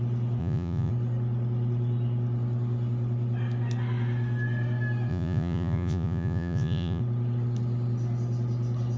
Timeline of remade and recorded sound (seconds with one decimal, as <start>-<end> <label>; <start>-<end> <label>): 0.0-0.4 recorded; 0.4-0.9 remade; 0.9-5.1 recorded; 5.1-7.0 remade; 7.0-9.0 recorded